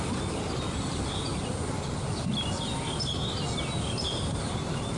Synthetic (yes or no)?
no